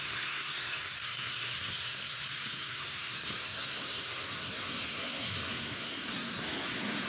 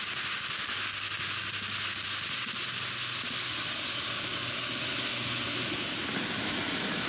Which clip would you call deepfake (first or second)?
first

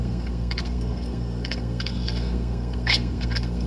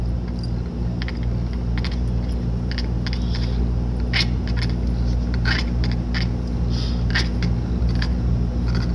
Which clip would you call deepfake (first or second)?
first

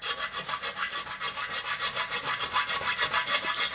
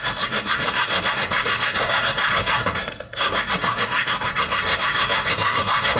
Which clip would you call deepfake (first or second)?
second